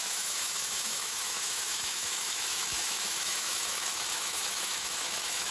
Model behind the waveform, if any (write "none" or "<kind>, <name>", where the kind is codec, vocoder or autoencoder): autoencoder, DAC-VAE